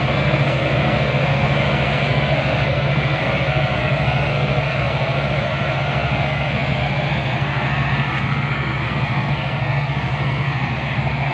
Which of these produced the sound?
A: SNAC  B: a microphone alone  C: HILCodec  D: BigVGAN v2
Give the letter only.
A